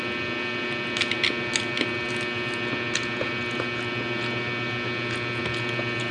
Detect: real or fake real